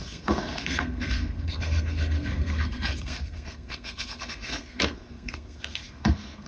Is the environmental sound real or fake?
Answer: fake